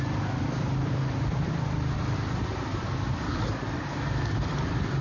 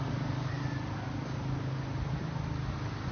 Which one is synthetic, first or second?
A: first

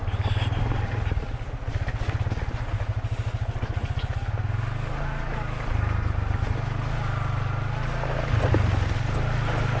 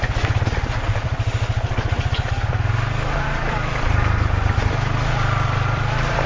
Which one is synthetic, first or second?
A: second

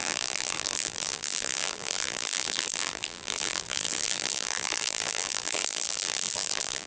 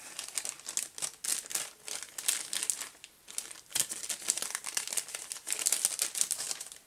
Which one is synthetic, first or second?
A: first